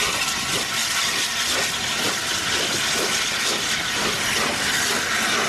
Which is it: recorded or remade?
recorded